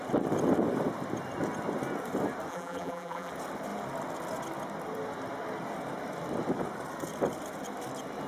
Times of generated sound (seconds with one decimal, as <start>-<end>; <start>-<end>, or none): 2.5-3.3